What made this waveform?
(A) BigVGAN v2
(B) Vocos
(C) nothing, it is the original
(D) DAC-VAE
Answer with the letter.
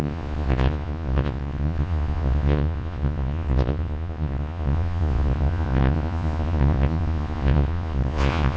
B